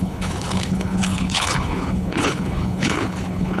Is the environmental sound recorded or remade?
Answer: remade